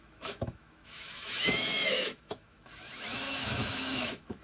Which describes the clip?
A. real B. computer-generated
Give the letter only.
B